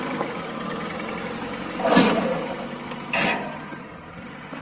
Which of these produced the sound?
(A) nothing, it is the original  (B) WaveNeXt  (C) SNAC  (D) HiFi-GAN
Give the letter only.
A